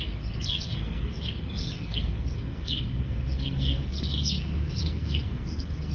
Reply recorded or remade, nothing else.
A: remade